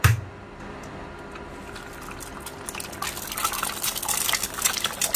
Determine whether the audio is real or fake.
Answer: real